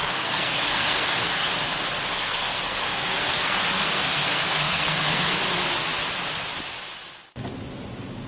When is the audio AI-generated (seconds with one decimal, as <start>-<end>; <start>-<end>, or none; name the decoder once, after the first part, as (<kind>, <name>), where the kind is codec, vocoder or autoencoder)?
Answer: 0.0-1.5 (codec, SNAC); 2.1-5.4